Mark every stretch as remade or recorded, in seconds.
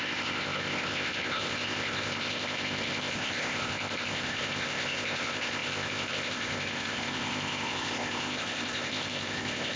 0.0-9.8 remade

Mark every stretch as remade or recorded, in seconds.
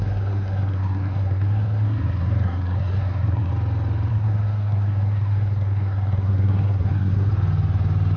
0.0-3.5 remade; 3.5-4.1 recorded; 4.1-7.3 remade; 7.3-8.2 recorded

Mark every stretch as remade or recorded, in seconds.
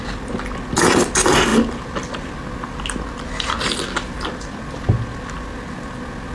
0.0-6.3 recorded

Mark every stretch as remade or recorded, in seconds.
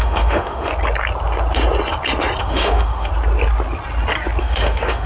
0.0-0.7 remade; 0.7-2.4 recorded; 2.4-3.1 remade; 3.1-4.4 recorded; 4.4-5.1 remade